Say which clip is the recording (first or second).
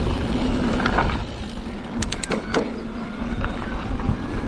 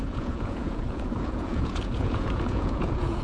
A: first